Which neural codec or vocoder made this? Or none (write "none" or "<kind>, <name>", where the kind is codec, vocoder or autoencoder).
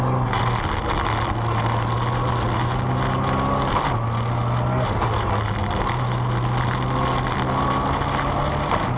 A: none